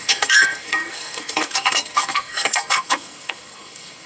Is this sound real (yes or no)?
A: no